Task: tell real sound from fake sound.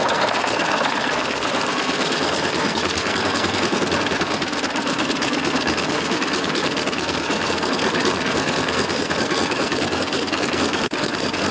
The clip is fake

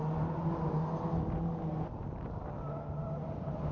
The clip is real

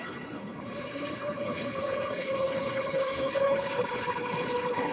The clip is fake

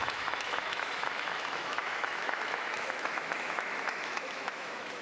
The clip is fake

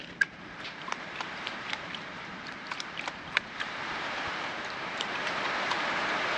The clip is fake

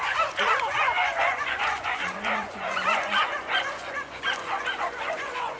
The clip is fake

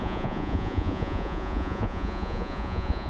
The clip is fake